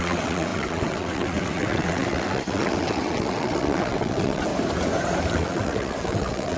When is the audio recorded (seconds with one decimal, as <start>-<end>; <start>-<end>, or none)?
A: 4.5-5.3